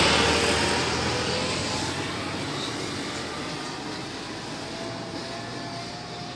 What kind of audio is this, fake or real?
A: real